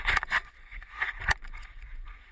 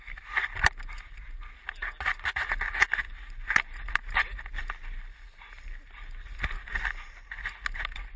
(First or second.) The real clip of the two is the second